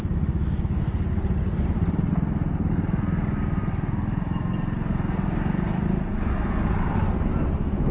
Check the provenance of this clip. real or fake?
real